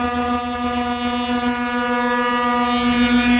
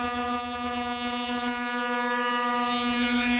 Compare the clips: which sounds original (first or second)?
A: first